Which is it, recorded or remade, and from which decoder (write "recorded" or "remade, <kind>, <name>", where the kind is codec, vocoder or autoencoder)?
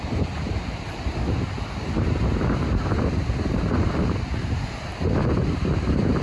remade, vocoder, BigVGAN v2